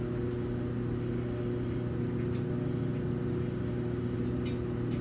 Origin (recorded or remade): recorded